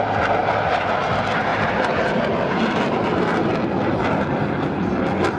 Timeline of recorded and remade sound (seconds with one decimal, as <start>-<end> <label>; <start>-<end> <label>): 0.0-0.4 recorded; 0.4-0.9 remade; 0.9-5.4 recorded